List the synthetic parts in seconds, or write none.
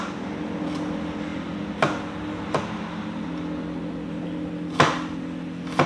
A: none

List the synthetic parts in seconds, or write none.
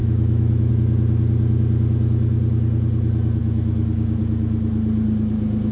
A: 0.0-0.7 (autoencoder, DAC-VAE); 3.4-4.2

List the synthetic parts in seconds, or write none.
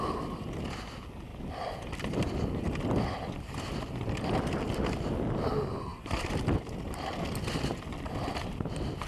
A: none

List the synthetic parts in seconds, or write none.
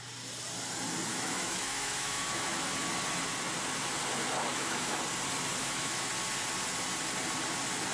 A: 1.1-2.9 (autoencoder, DAC-VAE); 4.5-5.0; 5.6-6.1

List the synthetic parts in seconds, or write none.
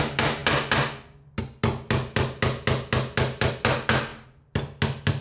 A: none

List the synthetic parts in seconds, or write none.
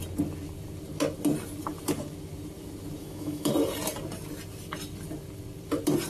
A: 3.0-3.5 (autoencoder, DAC-VAE)